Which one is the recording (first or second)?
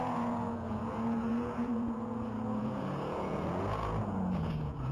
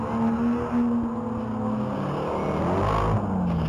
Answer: second